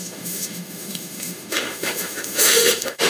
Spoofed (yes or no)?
yes